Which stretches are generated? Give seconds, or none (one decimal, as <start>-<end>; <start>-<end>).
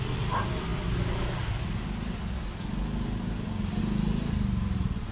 none